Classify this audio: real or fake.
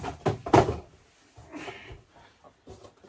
real